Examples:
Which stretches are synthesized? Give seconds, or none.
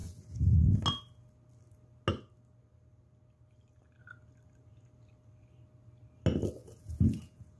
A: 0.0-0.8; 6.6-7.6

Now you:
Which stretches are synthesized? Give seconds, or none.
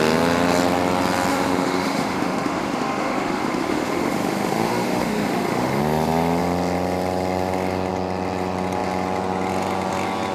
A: 1.3-5.8